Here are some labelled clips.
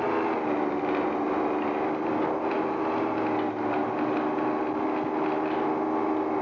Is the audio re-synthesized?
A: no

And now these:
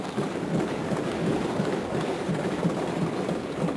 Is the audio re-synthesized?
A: yes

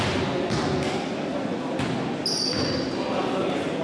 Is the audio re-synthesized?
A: no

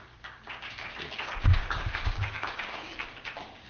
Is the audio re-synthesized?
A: yes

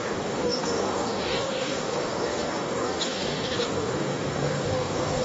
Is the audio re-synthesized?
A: yes